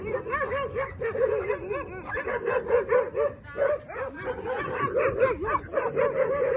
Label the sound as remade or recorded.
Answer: recorded